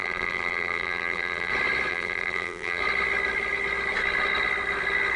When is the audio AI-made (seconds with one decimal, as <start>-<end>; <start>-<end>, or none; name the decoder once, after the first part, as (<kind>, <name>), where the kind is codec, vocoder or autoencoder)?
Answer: 0.0-1.5 (vocoder, BigVGAN v2); 1.9-2.8